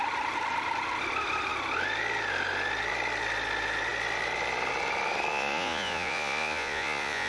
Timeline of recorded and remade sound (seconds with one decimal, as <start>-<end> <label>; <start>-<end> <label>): 0.0-5.3 recorded; 5.3-7.3 remade